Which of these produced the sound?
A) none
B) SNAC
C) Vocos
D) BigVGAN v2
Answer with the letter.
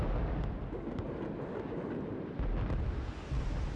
A